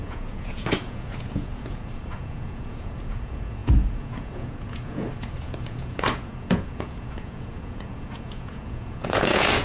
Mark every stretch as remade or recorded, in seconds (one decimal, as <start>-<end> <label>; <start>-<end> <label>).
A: 0.0-9.6 remade